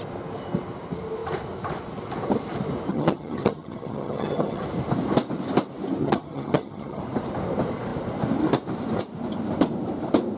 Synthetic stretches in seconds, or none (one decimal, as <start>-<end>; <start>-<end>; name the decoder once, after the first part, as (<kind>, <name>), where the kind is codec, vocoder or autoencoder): 2.9-4.6 (vocoder, HiFi-GAN); 6.0-7.0